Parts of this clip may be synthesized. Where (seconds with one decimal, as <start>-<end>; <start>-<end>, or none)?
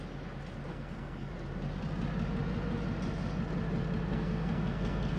0.7-1.3; 4.1-5.2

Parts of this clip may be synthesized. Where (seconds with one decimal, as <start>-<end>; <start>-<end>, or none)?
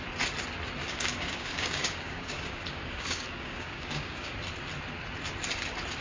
0.8-4.3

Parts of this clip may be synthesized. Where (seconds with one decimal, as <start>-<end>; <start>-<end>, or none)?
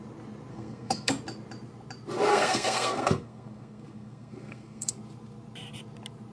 0.5-1.1; 2.3-4.9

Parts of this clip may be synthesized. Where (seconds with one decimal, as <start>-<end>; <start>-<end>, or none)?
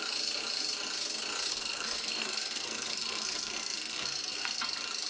1.5-4.6